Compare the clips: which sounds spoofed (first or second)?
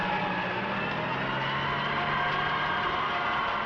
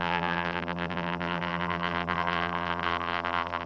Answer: second